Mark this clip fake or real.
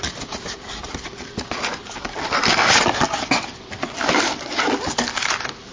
real